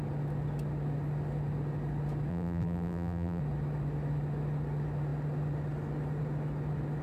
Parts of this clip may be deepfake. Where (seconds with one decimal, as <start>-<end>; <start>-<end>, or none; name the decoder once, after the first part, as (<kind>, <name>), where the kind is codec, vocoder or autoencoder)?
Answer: 2.3-3.4 (vocoder, BigVGAN v2)